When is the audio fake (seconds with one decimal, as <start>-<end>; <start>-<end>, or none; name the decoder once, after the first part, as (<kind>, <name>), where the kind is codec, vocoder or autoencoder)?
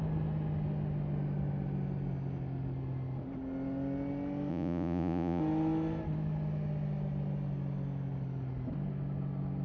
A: 4.5-5.4 (vocoder, Vocos)